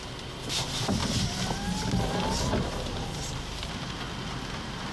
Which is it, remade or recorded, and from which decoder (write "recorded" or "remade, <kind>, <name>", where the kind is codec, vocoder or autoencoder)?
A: recorded